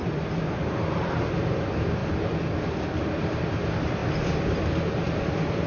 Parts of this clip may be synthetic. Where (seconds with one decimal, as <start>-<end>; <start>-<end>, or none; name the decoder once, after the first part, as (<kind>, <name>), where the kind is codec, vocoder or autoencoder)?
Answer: 0.0-4.0 (vocoder, BigVGAN v2); 4.6-5.7